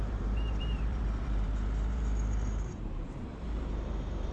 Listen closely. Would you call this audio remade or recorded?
remade